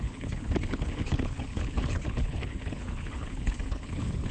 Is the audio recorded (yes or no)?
no